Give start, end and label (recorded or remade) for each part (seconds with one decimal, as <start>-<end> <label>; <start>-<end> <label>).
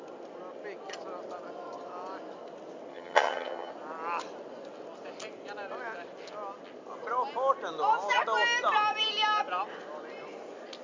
0.0-2.9 recorded; 2.9-3.7 remade; 3.7-10.8 recorded